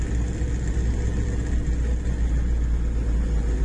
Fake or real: real